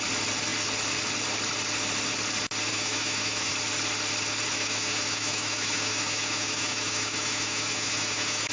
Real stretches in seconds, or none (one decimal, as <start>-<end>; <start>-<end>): 0.0-2.7; 3.5-4.6